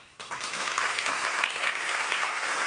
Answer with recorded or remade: remade